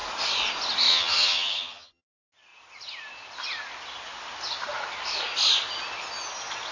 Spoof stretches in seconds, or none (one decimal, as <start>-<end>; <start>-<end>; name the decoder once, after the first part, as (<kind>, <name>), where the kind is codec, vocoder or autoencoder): 0.9-2.0 (vocoder, HiFi-GAN)